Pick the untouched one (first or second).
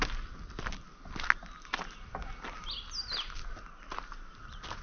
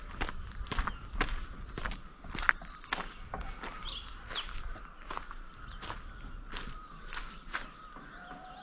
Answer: first